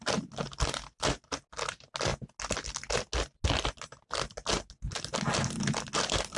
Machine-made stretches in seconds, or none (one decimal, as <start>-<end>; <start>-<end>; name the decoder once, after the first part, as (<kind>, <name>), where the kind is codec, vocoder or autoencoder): none

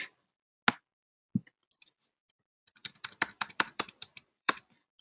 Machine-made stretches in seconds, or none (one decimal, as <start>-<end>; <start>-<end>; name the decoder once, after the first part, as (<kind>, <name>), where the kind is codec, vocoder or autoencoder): 0.0-0.5 (vocoder, BigVGAN v2); 2.3-5.0

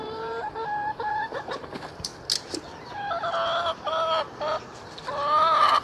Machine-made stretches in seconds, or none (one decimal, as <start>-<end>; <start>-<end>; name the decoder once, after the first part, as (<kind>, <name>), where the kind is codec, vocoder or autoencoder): 0.0-2.1 (vocoder, BigVGAN v2)